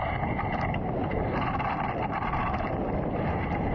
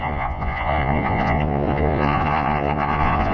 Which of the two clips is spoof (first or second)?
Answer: second